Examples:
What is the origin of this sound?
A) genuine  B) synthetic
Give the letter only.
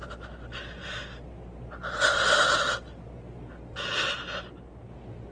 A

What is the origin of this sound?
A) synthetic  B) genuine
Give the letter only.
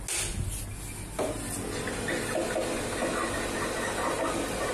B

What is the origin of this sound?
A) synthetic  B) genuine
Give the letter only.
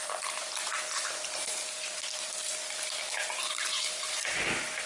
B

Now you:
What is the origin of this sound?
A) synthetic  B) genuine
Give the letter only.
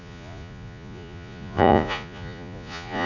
A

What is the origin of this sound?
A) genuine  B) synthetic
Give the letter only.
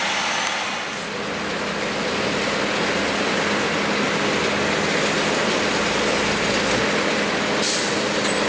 A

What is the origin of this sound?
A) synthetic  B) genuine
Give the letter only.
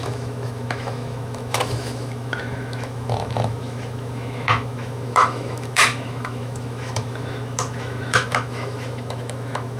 A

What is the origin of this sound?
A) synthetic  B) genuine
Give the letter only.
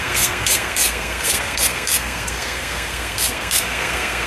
A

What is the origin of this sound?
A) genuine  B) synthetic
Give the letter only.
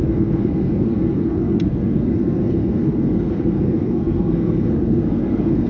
B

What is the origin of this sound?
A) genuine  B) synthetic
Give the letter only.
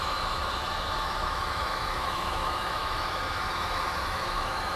B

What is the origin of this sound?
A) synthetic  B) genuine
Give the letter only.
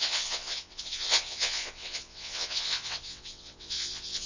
A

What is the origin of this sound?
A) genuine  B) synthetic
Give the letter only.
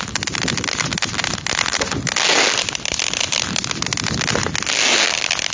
A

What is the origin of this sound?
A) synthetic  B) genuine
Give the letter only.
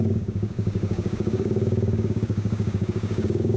A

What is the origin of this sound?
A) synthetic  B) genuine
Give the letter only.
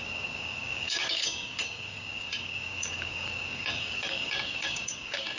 A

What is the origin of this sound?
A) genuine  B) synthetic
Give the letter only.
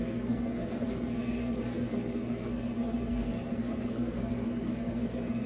B